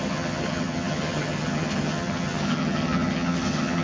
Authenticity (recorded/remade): remade